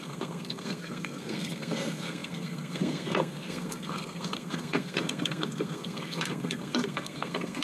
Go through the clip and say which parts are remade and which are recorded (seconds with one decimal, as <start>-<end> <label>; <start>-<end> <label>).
0.0-7.6 remade